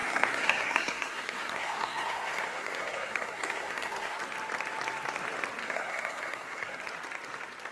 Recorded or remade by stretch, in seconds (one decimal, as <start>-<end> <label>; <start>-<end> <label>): 0.0-4.2 remade; 4.2-5.6 recorded; 5.6-6.8 remade; 6.8-7.7 recorded